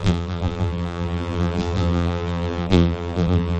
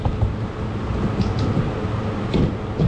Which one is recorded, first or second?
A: second